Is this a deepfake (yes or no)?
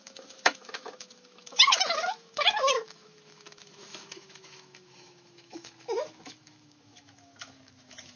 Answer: yes